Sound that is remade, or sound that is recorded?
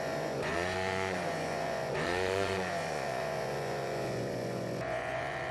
remade